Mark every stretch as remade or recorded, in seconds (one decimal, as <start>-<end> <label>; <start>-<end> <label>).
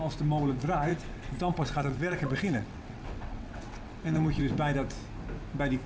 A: 0.0-0.9 recorded; 0.9-4.4 remade; 4.4-5.9 recorded